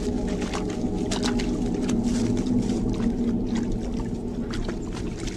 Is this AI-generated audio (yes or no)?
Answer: no